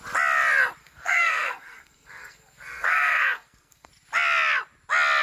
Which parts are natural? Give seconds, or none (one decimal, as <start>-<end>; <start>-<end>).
0.0-0.8; 3.9-5.2